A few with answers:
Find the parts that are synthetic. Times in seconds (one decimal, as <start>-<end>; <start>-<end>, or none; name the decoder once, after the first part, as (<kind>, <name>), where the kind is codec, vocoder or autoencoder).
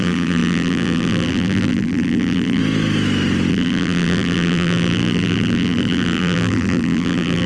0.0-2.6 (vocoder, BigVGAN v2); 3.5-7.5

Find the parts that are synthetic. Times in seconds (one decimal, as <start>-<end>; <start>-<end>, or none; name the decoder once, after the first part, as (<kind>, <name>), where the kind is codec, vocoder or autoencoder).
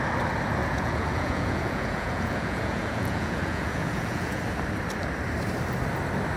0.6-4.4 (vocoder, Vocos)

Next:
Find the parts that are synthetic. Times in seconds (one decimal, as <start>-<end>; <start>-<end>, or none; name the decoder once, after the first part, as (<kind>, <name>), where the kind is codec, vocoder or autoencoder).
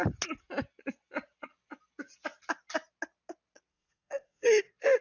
3.7-4.6 (codec, SNAC)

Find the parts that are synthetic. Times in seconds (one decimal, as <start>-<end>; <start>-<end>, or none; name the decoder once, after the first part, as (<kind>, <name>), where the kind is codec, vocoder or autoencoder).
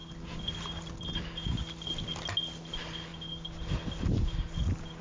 none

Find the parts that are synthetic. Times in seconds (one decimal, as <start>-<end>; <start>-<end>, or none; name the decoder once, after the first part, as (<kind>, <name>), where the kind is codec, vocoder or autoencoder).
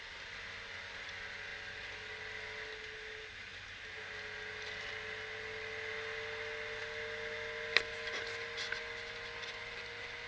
none